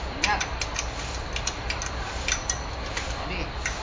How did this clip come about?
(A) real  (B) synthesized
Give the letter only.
A